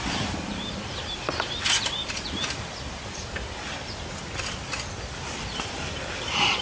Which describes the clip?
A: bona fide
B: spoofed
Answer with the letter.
A